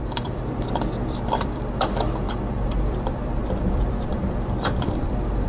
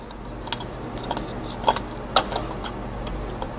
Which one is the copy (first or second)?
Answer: first